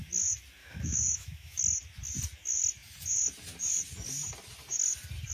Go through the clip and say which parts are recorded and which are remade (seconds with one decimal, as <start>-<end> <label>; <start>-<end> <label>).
0.0-0.6 recorded; 0.6-1.6 remade; 1.6-5.3 recorded